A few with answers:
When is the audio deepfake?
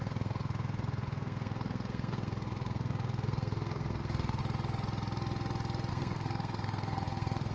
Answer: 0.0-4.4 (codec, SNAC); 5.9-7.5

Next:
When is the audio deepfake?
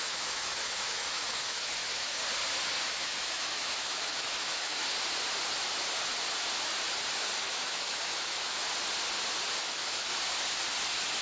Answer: 0.0-2.2 (autoencoder, DAC-VAE); 2.9-4.8; 7.4-8.6; 9.6-10.1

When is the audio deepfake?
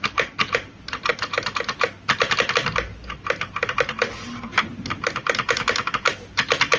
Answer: none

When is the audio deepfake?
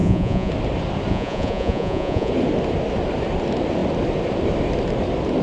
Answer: 0.0-0.5 (vocoder, Vocos); 1.1-2.3